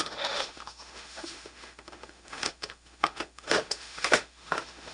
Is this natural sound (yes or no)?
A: no